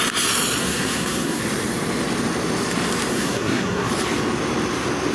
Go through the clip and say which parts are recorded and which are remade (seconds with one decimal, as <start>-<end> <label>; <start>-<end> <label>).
0.0-0.6 recorded; 0.6-1.4 remade; 1.4-3.1 recorded; 3.1-3.9 remade; 3.9-5.1 recorded